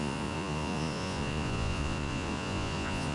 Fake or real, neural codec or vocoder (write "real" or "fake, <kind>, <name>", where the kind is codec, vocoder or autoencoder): fake, vocoder, Vocos